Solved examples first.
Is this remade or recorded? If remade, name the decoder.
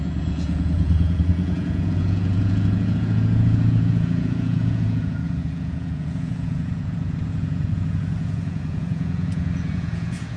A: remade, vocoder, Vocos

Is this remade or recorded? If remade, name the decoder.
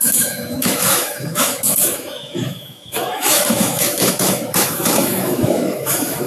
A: remade, autoencoder, DAC-VAE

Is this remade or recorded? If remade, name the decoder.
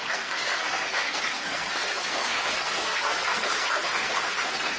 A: remade, codec, SNAC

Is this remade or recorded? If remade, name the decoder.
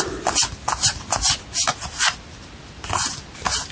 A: recorded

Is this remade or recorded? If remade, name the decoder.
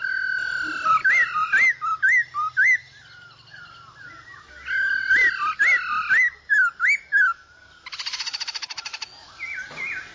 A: recorded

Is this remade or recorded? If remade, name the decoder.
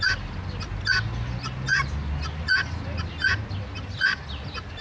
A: recorded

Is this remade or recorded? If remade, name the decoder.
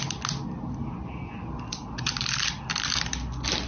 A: recorded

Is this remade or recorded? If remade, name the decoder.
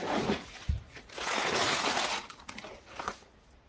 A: remade, vocoder, Vocos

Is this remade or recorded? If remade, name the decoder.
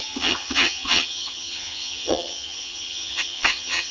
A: remade, vocoder, HiFi-GAN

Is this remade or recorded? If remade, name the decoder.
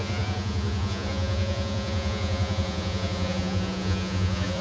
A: remade, vocoder, Vocos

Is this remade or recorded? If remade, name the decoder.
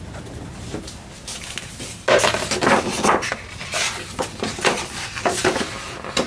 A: recorded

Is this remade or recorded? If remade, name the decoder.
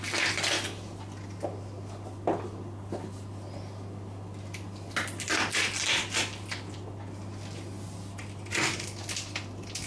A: recorded